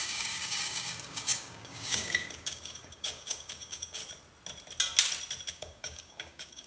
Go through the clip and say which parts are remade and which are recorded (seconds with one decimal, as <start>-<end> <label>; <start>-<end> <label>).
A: 0.0-4.0 remade; 4.0-5.5 recorded; 5.5-6.7 remade